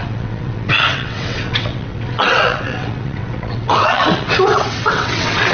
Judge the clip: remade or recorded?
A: remade